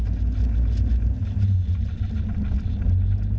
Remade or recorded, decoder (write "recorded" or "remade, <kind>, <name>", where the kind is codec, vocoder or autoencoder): recorded